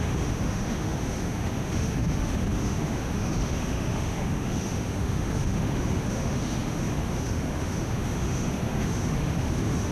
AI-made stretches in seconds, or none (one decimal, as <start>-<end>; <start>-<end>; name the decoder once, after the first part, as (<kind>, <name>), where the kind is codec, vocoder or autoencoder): 0.0-9.9 (autoencoder, DAC-VAE)